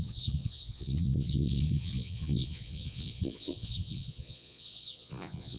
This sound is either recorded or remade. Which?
remade